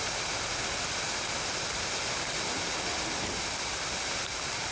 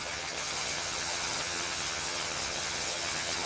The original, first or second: first